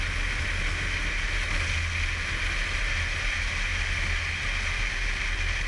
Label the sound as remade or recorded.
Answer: recorded